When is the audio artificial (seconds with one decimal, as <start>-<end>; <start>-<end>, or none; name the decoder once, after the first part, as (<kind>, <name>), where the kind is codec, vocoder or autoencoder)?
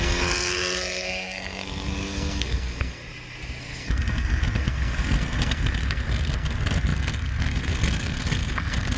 0.0-3.0 (codec, SNAC); 3.6-9.0